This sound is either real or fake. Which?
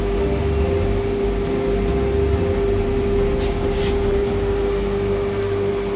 real